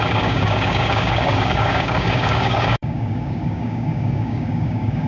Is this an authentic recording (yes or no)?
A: no